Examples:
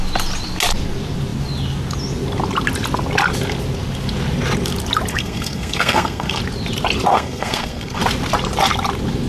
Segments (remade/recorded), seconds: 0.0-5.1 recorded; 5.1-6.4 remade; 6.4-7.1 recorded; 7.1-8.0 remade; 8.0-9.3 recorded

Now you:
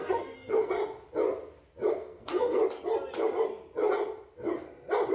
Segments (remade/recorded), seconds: 0.0-0.8 remade; 0.8-1.9 recorded; 1.9-2.6 remade; 2.6-5.1 recorded

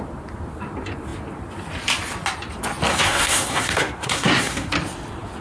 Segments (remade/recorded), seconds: 0.0-2.9 recorded; 2.9-4.7 remade; 4.7-5.4 recorded

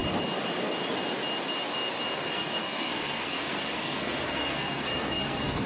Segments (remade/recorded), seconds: 0.0-2.2 recorded; 2.2-5.7 remade

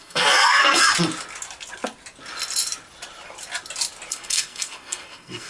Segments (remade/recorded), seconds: 0.0-0.8 remade; 0.8-4.1 recorded; 4.1-5.5 remade

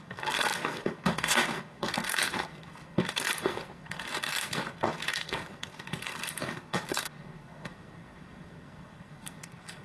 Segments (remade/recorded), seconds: 0.0-9.8 remade

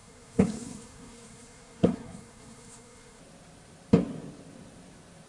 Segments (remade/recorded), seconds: 0.0-3.2 remade; 3.2-5.3 recorded